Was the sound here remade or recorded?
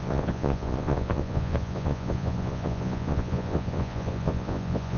remade